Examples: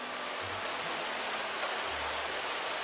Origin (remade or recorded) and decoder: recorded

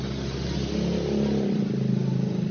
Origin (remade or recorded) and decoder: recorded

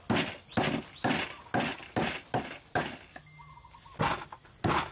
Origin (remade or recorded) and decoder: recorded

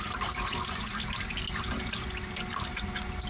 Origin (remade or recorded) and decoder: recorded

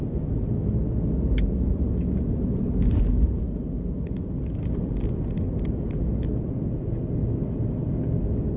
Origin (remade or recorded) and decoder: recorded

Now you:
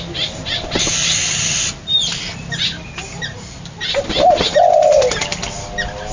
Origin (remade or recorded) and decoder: recorded